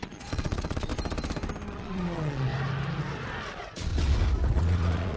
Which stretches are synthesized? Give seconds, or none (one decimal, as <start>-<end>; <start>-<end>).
0.0-0.9; 1.7-2.5; 3.5-3.9; 4.5-5.2